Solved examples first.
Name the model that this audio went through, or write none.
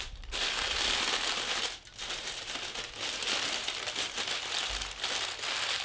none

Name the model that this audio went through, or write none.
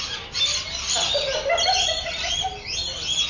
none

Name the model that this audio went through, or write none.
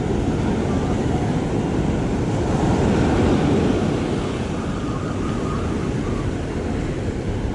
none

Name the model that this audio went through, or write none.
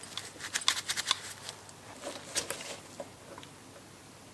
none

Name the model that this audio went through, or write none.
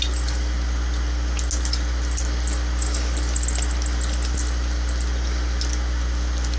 none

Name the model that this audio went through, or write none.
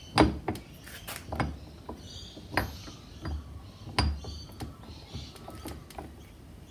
none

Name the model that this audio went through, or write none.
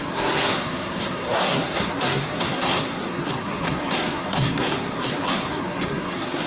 codec, SNAC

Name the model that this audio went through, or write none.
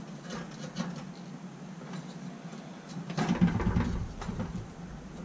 none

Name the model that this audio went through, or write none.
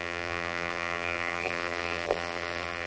vocoder, BigVGAN v2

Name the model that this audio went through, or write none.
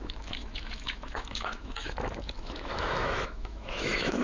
autoencoder, DAC-VAE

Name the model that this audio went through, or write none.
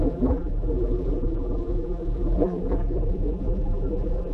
vocoder, BigVGAN v2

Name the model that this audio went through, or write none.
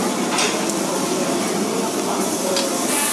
none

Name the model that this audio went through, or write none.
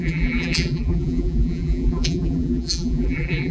vocoder, BigVGAN v2